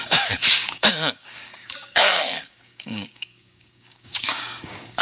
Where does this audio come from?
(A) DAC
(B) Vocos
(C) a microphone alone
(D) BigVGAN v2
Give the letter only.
A